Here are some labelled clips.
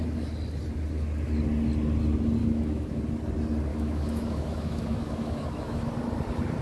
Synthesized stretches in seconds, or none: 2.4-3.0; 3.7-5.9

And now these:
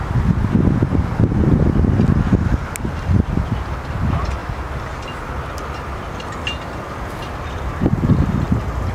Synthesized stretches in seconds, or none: none

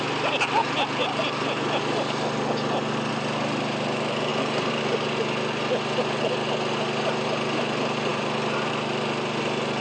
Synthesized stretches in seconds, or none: 8.1-8.7

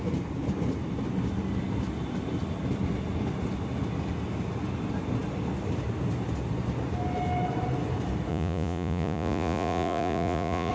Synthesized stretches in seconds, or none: 8.3-10.7

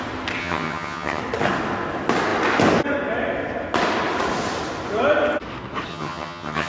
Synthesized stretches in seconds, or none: 0.4-1.2; 5.9-6.7

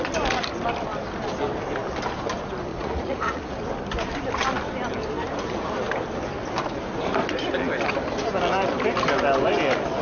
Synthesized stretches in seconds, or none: 2.7-3.4